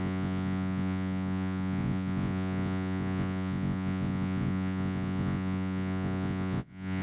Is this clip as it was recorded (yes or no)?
no